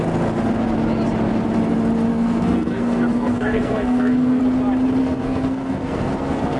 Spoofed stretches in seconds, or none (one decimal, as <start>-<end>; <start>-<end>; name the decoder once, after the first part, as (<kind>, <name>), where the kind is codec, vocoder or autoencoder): 2.1-4.4 (codec, SNAC); 5.0-6.6